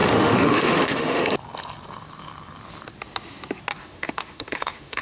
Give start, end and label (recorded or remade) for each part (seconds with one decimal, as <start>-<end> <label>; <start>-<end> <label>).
0.0-1.2 remade; 1.2-3.8 recorded; 3.8-5.0 remade